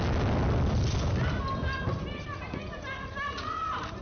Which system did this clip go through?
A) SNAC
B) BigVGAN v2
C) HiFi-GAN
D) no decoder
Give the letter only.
D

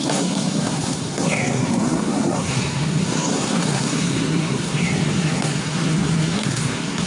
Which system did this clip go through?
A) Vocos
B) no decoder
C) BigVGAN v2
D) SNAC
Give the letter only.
D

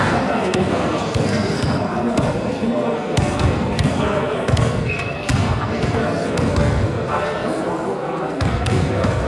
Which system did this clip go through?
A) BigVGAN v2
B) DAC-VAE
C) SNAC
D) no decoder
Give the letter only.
C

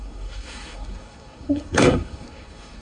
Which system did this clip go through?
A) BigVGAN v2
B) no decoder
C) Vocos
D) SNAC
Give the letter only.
D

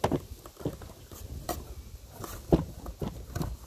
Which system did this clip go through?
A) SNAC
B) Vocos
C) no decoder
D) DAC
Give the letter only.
C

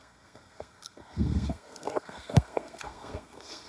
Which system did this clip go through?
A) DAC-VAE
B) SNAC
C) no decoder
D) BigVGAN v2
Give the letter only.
B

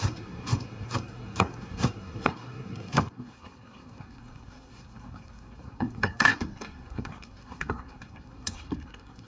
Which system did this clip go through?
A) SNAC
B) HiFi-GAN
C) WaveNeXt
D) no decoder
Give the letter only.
A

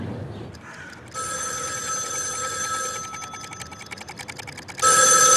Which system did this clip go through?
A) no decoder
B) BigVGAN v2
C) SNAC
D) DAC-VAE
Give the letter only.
A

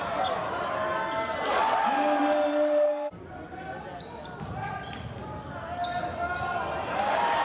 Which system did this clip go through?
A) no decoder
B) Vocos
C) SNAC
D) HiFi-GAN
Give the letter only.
A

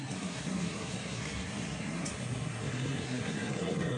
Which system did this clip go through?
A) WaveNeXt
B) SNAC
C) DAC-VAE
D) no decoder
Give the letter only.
B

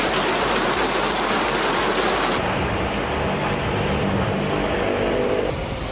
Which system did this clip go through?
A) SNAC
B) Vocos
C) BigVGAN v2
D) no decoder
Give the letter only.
D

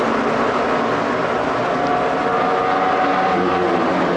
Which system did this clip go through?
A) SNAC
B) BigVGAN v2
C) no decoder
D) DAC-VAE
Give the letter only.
C